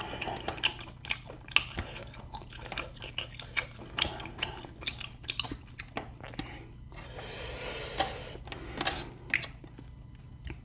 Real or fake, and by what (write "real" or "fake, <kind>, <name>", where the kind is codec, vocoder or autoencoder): real